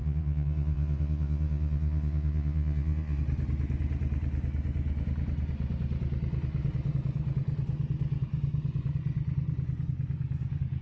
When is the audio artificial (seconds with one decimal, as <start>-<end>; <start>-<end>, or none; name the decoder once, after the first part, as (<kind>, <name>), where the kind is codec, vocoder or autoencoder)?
0.0-3.2 (vocoder, Vocos)